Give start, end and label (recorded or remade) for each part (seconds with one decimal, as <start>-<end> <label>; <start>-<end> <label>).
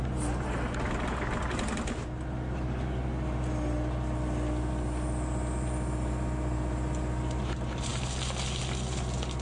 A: 0.0-9.4 recorded